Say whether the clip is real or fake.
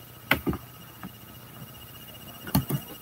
real